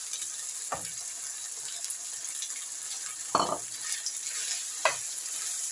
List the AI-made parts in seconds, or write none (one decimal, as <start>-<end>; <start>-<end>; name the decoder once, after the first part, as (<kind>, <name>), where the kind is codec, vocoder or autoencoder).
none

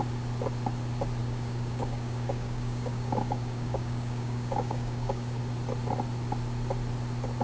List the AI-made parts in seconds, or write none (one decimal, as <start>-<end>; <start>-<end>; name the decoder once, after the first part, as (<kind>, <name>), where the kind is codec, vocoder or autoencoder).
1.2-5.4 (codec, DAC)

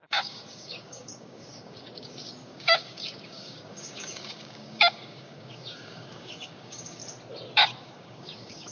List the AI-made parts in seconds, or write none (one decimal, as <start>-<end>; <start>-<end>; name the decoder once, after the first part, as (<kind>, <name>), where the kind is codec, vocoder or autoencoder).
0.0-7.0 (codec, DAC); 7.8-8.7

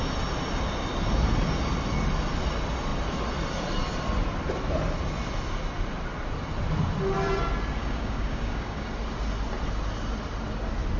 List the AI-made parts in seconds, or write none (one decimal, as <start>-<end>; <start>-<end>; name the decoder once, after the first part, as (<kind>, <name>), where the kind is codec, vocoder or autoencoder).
7.8-8.9 (codec, DAC)

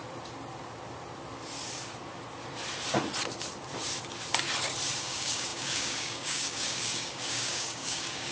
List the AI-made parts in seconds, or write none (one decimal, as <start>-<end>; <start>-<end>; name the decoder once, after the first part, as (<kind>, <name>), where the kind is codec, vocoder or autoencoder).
5.0-8.3 (codec, DAC)